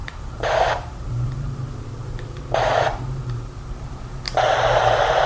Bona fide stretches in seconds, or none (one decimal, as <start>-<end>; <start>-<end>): 3.2-5.3